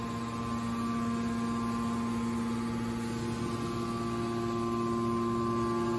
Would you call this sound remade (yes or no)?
no